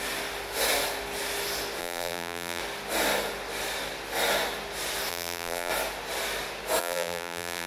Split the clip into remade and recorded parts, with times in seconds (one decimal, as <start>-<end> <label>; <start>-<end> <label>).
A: 0.0-1.8 recorded; 1.8-2.6 remade; 2.6-5.1 recorded; 5.1-5.7 remade; 5.7-6.8 recorded; 6.8-7.7 remade